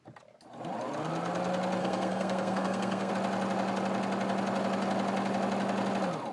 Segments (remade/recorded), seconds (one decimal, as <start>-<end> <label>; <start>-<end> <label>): 0.0-1.8 recorded; 1.8-3.1 remade; 3.1-6.3 recorded